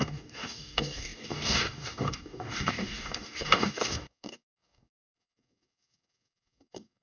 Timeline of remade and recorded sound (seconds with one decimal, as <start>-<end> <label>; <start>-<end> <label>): 0.0-7.0 remade